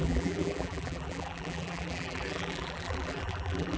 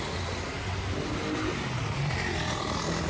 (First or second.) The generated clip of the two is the first